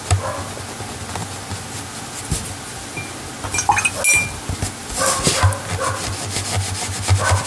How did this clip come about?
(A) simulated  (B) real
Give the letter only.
B